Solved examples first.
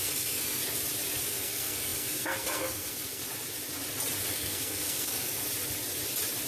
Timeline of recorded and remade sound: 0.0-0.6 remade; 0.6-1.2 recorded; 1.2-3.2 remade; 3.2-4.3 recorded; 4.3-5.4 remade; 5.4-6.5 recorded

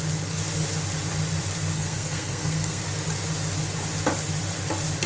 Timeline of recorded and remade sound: 0.0-1.7 recorded; 1.7-2.8 remade; 2.8-5.1 recorded

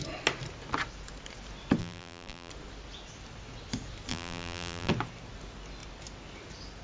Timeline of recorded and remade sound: 0.0-1.8 recorded; 1.8-2.5 remade; 2.5-4.1 recorded; 4.1-4.9 remade; 4.9-6.8 recorded

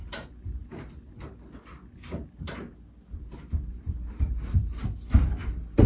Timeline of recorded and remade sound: 0.0-5.9 recorded

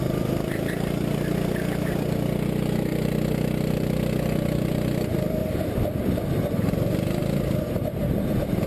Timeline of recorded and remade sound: 0.0-2.9 recorded; 2.9-5.0 remade; 5.0-5.4 recorded; 5.4-6.3 remade; 6.3-8.7 recorded